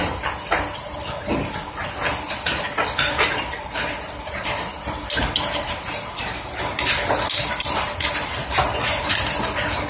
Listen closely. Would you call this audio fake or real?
real